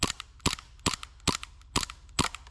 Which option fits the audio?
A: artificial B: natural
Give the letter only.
B